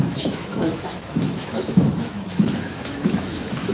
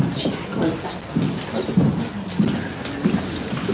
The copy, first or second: first